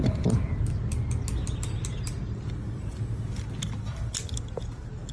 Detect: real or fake real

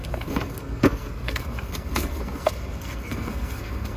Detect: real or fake fake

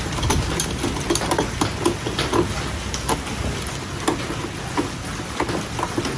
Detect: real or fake real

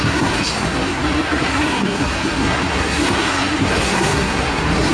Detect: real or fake fake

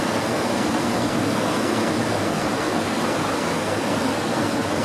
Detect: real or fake fake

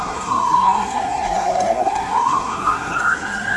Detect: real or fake fake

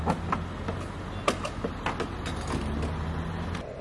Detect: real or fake real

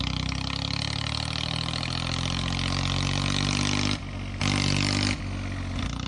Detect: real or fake real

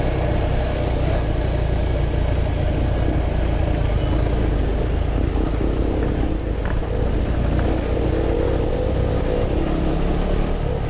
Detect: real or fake real